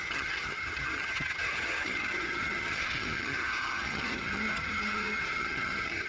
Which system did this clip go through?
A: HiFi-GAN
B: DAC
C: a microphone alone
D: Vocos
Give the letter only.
A